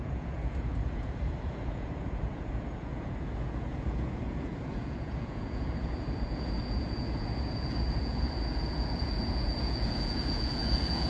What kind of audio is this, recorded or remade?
remade